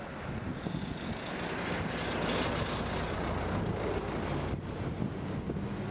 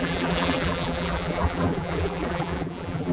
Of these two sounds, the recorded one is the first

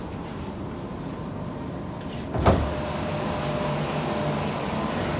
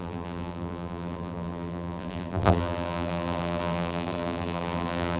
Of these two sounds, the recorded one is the first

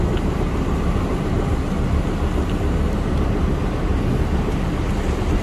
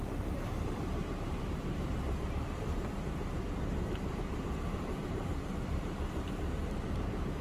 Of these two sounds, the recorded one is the first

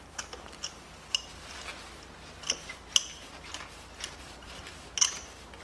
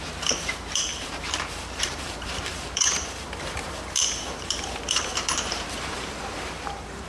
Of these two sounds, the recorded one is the first